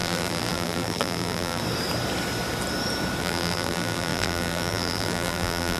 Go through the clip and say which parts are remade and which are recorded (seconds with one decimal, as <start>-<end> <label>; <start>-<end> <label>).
0.0-1.6 remade; 1.6-3.2 recorded; 3.2-5.8 remade